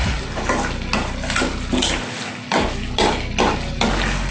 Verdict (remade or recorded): recorded